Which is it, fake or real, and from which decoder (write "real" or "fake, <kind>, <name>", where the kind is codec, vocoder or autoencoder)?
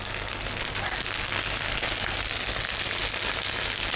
real